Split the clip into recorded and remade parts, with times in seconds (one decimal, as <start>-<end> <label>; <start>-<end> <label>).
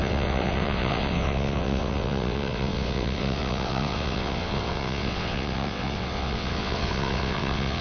0.0-7.8 remade